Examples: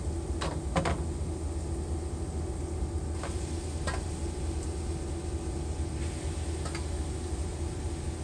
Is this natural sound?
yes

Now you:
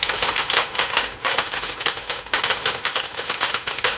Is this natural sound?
no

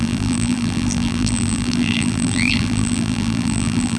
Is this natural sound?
no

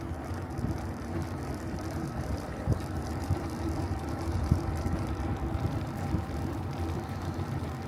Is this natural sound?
no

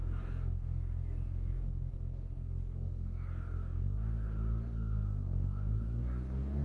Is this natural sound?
no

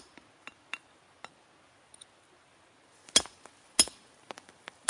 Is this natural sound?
yes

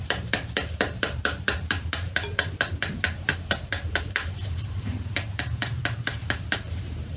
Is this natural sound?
no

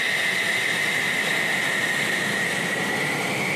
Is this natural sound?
yes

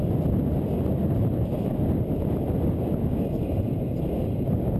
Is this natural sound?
yes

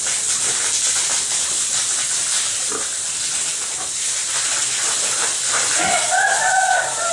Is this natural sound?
yes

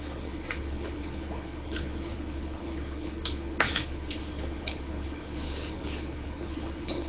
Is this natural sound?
no